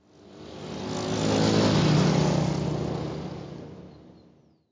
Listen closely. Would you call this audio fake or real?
real